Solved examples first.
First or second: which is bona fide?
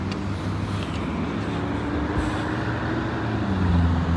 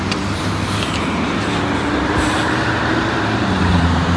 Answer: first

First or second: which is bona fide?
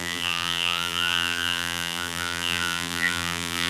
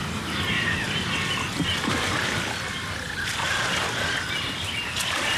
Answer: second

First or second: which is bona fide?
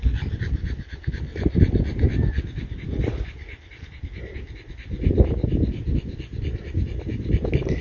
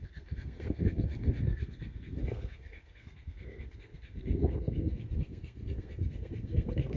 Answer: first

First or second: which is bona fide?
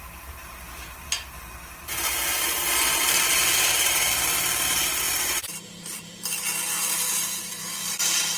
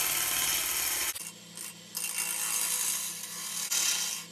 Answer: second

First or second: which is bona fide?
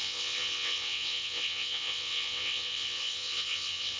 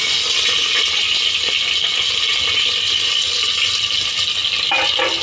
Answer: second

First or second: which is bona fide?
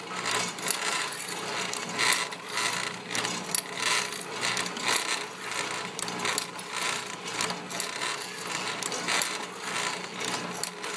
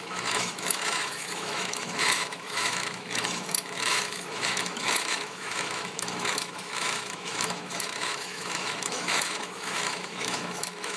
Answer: first